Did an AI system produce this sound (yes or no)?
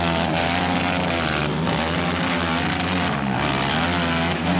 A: no